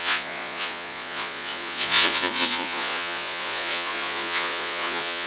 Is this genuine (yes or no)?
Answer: no